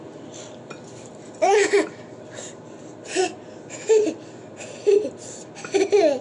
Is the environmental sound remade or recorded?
recorded